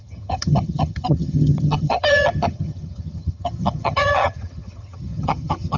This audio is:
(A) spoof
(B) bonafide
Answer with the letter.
A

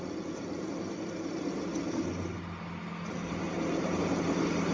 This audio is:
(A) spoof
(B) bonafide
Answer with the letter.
B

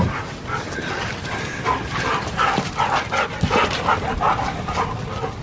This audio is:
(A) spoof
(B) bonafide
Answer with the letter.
B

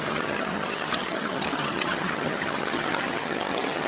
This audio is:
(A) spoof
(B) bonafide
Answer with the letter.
A